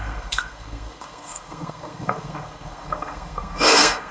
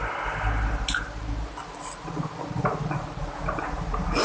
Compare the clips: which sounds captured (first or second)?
second